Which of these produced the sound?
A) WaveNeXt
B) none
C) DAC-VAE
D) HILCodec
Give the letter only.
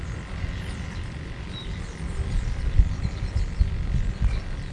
B